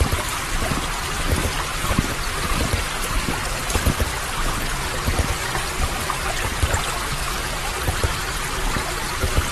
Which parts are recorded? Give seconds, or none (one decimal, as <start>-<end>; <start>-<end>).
0.0-1.7; 3.3-5.4; 8.4-9.5

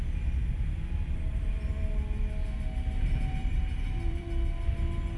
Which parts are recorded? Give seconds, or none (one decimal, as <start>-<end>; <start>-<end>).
0.0-0.4; 1.9-3.4; 4.3-5.2